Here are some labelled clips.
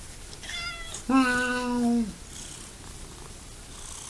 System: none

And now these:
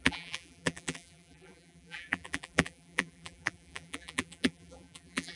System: vocoder, BigVGAN v2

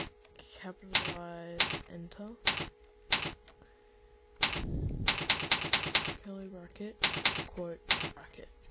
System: none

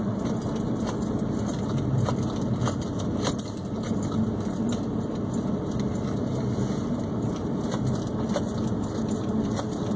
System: none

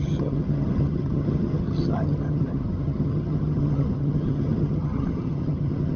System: vocoder, HiFi-GAN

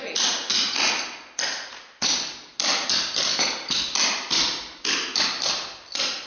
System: none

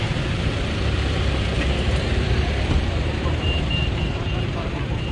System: vocoder, BigVGAN v2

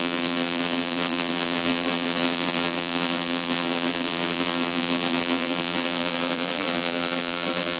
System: vocoder, BigVGAN v2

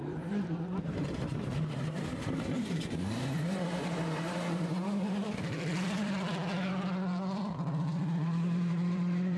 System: vocoder, BigVGAN v2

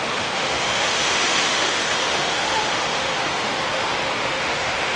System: autoencoder, DAC-VAE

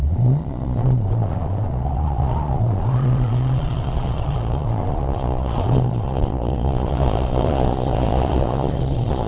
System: vocoder, Vocos